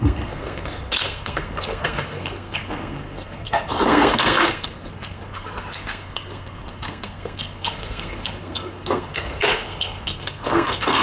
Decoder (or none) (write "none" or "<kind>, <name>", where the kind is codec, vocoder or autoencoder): codec, SNAC